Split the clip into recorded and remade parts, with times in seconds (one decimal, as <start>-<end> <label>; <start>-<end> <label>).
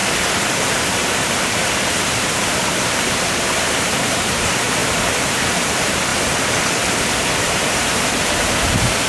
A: 0.0-1.6 recorded; 1.6-6.1 remade; 6.1-7.4 recorded; 7.4-9.1 remade